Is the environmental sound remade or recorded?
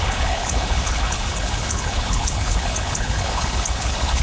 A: remade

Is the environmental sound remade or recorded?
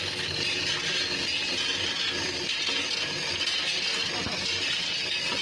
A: recorded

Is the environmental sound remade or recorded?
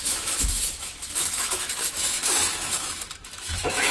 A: remade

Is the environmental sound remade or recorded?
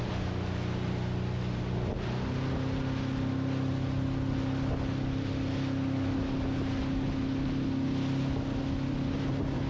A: recorded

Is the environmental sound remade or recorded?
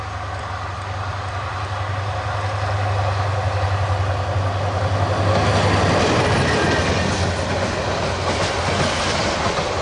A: recorded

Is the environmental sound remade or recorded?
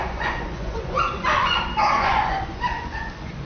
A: remade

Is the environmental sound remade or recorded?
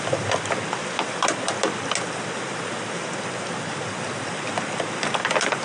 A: recorded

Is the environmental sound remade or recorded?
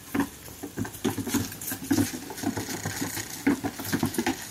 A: recorded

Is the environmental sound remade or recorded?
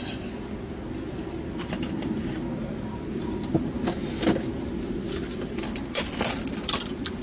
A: recorded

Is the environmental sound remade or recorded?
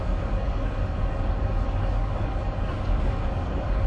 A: remade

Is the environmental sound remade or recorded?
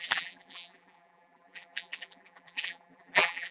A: remade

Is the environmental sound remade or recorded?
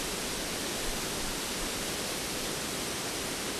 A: recorded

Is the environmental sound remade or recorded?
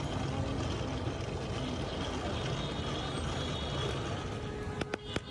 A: recorded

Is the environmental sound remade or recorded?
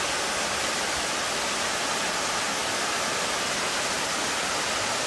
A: recorded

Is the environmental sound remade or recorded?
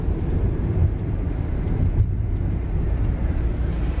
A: remade